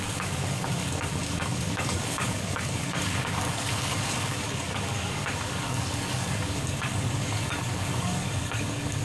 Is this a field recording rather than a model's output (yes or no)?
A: no